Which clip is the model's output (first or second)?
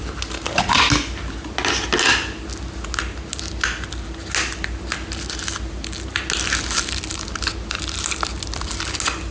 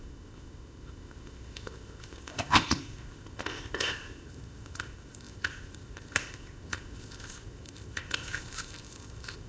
second